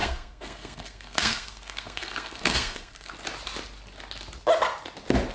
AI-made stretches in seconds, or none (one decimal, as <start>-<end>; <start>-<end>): 0.0-3.1